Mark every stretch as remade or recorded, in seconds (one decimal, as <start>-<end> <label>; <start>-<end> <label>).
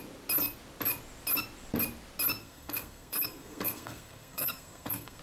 0.0-2.4 recorded; 2.4-5.2 remade